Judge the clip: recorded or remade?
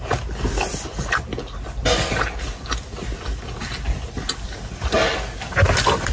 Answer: recorded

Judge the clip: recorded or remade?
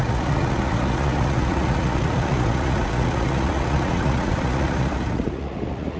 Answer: remade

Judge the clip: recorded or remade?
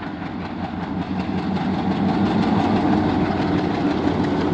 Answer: recorded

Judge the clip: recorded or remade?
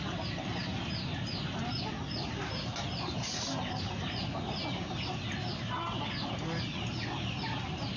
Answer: recorded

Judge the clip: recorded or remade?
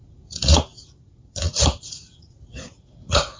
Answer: remade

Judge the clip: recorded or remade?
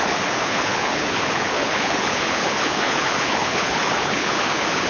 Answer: remade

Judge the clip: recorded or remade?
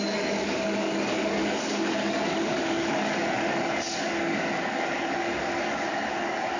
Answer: remade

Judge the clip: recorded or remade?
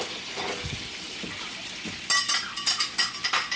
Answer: recorded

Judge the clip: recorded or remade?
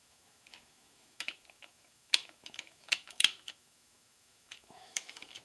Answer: remade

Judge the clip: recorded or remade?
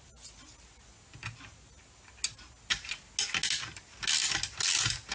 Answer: recorded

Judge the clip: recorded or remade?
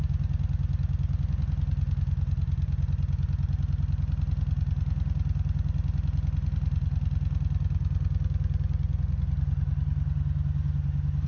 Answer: recorded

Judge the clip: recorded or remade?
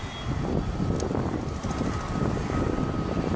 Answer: recorded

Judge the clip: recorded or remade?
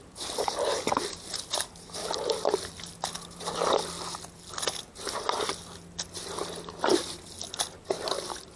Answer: recorded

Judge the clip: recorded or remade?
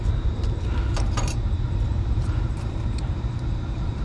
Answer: remade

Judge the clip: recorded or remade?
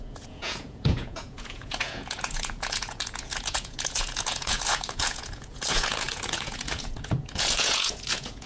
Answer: remade